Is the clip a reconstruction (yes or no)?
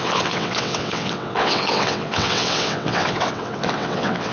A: yes